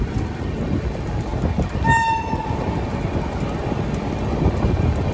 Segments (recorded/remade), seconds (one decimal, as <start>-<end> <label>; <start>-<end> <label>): 0.0-1.3 remade; 1.3-4.4 recorded; 4.4-5.1 remade